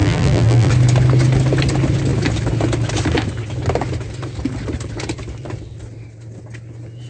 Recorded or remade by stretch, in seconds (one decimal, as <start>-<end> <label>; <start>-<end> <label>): 0.0-0.7 remade; 0.7-7.1 recorded